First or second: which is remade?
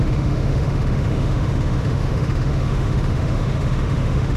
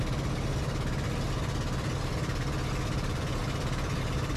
first